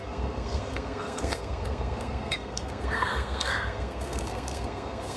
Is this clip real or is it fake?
fake